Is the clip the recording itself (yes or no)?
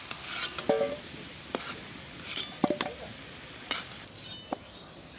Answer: yes